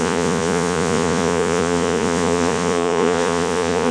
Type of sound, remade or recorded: remade